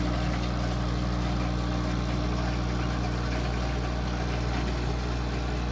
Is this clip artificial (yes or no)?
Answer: no